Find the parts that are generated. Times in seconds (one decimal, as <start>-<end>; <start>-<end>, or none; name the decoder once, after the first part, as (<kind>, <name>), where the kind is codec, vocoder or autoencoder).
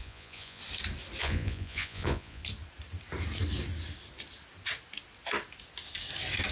0.0-0.6 (vocoder, Vocos); 1.2-2.4